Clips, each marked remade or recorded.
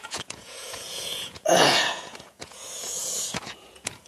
remade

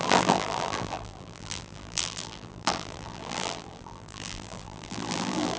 remade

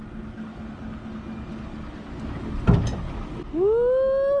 recorded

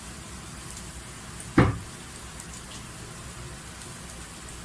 recorded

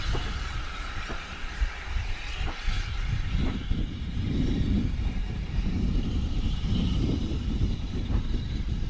remade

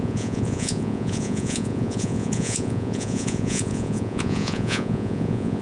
remade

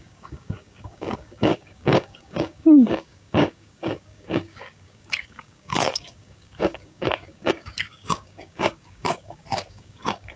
remade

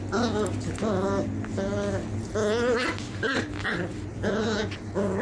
recorded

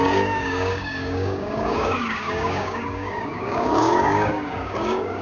remade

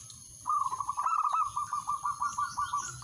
recorded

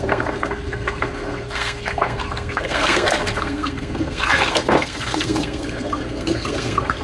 remade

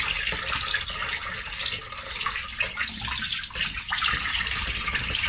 recorded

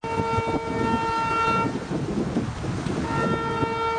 recorded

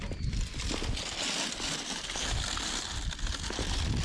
recorded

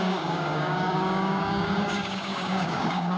remade